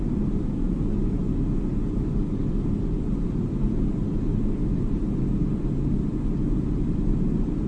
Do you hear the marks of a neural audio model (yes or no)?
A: no